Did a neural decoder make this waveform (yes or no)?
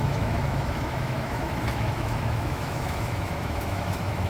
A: yes